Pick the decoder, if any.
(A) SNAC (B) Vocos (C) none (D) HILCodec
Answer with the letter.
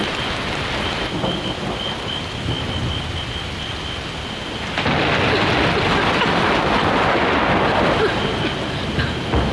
C